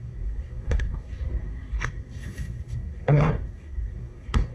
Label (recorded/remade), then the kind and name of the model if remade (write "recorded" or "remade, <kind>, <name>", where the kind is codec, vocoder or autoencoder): remade, codec, SNAC